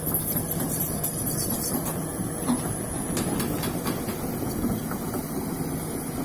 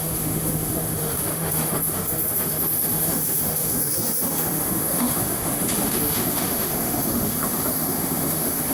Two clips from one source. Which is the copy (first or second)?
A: second